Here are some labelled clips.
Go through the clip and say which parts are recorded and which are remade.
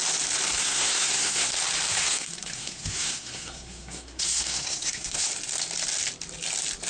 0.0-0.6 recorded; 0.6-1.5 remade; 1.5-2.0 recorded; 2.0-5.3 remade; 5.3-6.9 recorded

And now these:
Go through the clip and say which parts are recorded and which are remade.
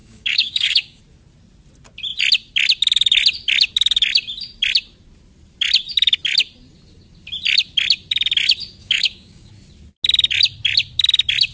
0.0-1.0 remade; 1.0-8.8 recorded; 8.8-9.5 remade; 9.5-11.5 recorded